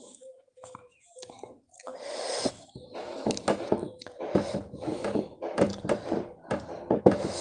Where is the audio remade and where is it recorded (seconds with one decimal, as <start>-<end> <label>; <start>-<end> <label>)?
0.0-1.9 remade; 1.9-2.5 recorded; 2.5-5.7 remade; 5.7-7.0 recorded; 7.0-7.4 remade